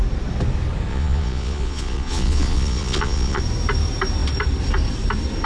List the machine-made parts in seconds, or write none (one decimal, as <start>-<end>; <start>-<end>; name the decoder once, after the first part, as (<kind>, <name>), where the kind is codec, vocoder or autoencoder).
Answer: 0.9-3.4 (vocoder, Vocos)